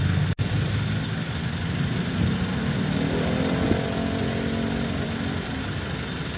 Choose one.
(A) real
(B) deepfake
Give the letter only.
A